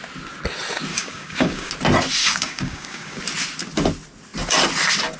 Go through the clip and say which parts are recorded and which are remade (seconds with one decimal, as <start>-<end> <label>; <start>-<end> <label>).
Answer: 0.0-0.9 recorded; 0.9-1.7 remade; 1.7-2.2 recorded; 2.2-3.2 remade; 3.2-5.2 recorded